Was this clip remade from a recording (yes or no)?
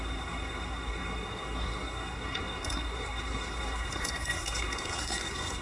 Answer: yes